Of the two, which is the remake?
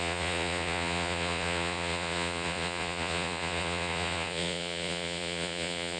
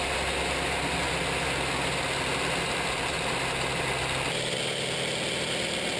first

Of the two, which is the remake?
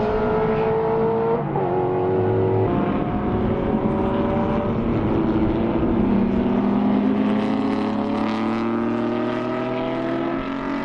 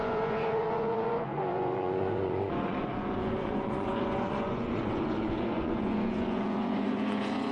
second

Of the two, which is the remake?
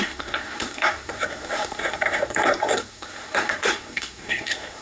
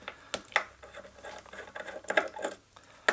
first